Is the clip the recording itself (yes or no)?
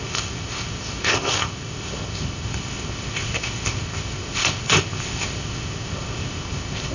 no